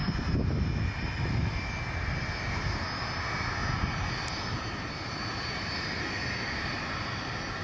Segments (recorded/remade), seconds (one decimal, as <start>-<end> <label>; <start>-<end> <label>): 0.0-7.6 recorded